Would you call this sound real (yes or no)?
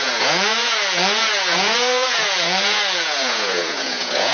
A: no